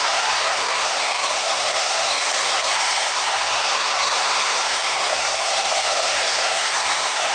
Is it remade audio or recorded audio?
remade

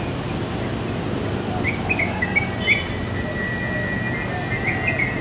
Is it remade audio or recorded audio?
recorded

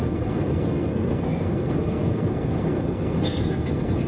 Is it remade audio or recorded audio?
remade